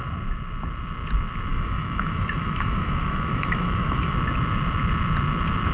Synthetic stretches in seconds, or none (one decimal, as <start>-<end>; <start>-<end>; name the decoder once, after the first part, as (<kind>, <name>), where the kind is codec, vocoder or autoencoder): 1.5-4.1 (autoencoder, DAC-VAE)